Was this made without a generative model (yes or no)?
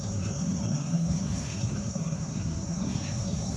no